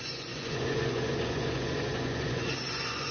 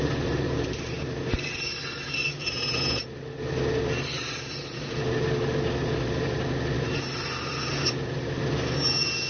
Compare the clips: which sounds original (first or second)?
second